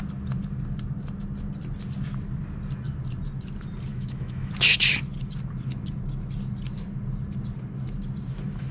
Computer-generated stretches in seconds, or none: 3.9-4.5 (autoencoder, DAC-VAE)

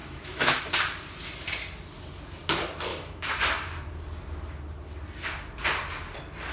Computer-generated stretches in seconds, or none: 0.0-0.6 (autoencoder, DAC-VAE); 2.9-3.4

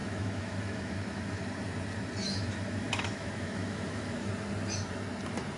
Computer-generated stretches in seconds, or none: 0.0-1.4 (autoencoder, DAC-VAE); 2.2-4.3

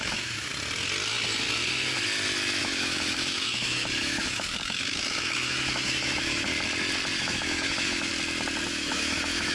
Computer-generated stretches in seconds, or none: 0.0-0.5 (autoencoder, DAC-VAE); 2.6-6.5; 7.2-8.1; 8.7-9.5